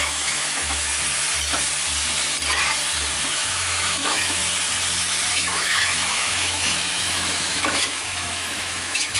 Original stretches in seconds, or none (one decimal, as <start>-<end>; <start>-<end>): 0.9-3.3; 4.4-5.3